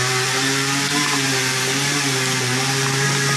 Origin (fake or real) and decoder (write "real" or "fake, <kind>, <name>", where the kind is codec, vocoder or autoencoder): fake, vocoder, BigVGAN v2